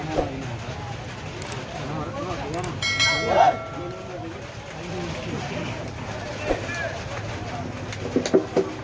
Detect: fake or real real